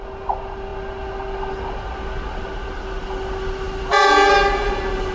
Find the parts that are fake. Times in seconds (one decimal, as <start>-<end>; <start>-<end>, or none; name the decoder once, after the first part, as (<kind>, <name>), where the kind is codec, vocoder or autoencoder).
none